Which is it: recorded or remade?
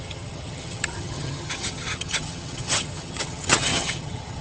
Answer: remade